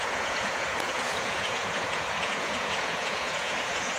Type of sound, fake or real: fake